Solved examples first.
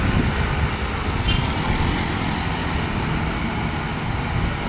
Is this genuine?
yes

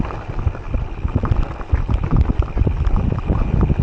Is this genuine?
yes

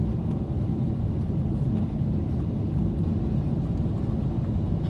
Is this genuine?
yes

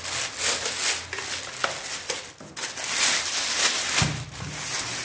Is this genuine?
yes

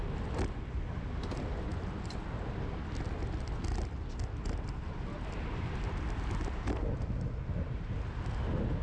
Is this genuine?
yes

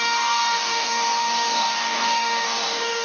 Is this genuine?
no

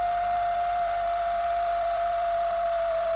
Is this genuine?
no